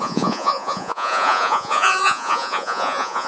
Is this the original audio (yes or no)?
no